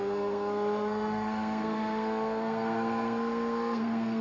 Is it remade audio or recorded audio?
remade